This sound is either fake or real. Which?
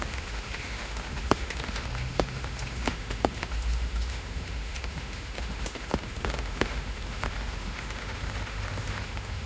fake